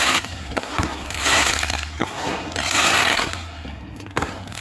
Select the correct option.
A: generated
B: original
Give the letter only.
A